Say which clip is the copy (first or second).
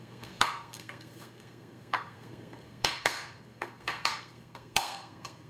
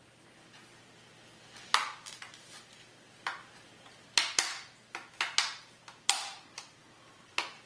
first